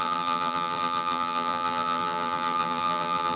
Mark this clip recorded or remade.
remade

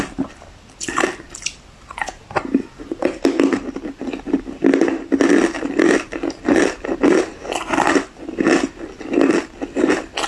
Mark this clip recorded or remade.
recorded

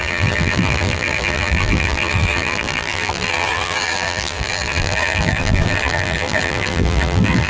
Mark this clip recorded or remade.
remade